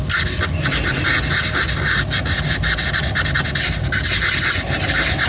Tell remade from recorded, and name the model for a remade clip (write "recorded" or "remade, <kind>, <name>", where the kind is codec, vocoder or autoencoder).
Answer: recorded